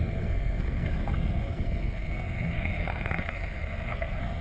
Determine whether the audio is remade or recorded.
remade